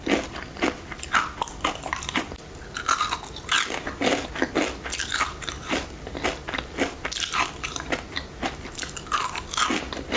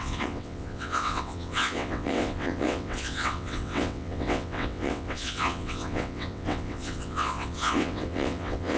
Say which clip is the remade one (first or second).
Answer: second